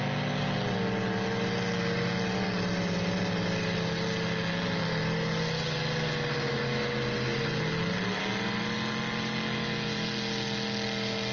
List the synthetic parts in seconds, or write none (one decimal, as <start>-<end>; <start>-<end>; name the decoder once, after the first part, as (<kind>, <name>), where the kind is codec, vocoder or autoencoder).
none